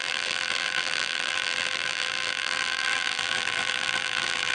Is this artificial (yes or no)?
yes